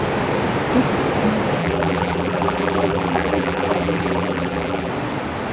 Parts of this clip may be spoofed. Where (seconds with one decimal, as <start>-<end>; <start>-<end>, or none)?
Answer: 1.6-4.9